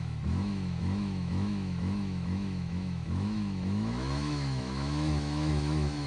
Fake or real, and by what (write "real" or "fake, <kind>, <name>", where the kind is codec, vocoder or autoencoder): fake, autoencoder, DAC-VAE